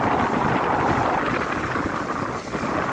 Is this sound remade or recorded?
recorded